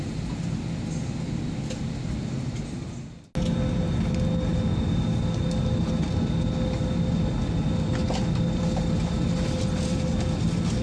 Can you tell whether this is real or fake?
real